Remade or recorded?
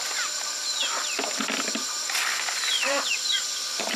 remade